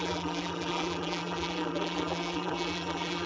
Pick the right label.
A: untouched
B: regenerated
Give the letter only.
B